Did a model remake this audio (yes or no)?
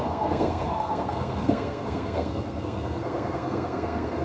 yes